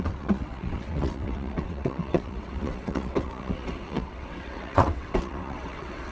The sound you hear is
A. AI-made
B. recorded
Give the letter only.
A